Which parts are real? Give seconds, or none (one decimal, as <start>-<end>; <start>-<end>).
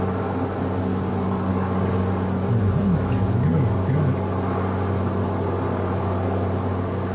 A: 0.0-1.5; 2.0-2.8; 3.5-7.1